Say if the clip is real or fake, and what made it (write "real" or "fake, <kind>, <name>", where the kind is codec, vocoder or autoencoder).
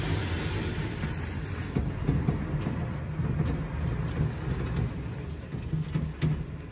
real